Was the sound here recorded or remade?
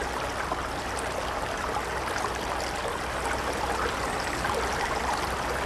recorded